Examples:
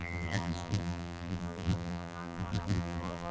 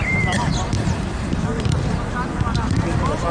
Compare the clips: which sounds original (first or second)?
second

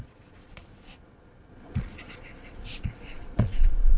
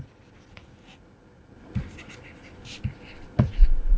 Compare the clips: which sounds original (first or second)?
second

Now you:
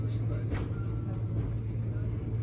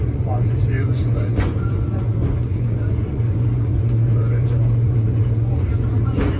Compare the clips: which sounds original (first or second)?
first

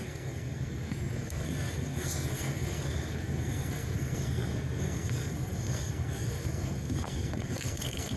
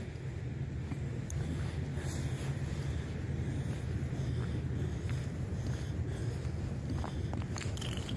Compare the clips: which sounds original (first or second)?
second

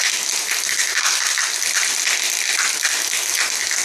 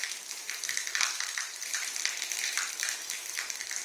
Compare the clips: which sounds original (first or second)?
first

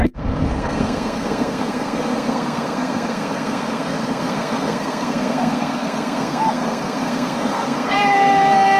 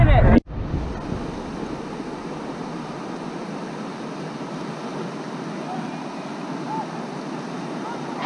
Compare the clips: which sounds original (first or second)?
second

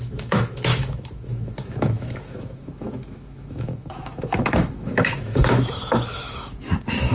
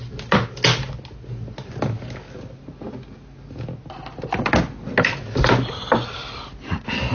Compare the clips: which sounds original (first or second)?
second